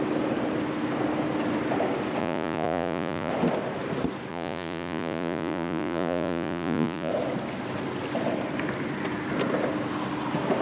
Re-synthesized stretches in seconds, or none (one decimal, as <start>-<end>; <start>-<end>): 2.2-3.3; 4.3-7.1